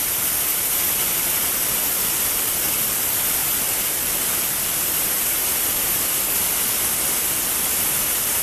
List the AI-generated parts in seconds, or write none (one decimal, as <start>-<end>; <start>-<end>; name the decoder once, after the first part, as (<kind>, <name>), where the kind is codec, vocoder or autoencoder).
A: none